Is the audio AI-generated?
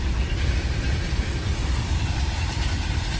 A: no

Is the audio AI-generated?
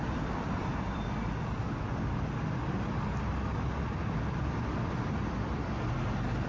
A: no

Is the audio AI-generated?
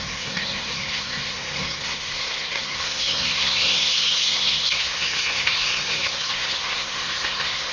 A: yes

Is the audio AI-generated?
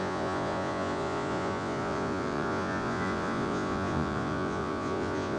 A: yes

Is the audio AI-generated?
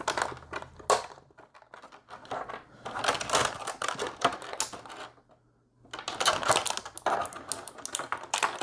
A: no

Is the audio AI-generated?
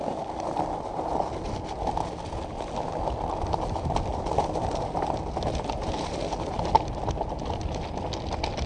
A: no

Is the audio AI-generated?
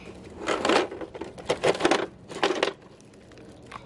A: no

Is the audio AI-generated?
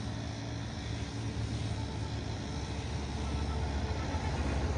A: no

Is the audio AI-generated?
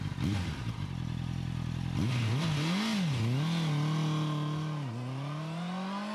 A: no